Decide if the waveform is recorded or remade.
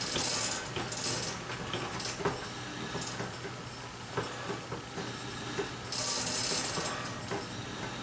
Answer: recorded